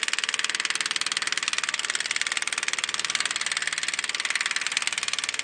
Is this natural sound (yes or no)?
yes